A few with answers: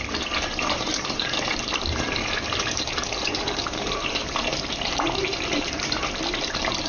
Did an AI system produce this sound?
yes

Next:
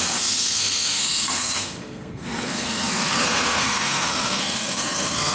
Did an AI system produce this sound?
yes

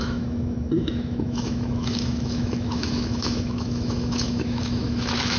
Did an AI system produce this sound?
yes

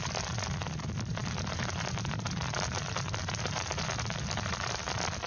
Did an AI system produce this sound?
no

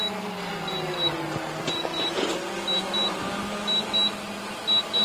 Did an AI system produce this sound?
no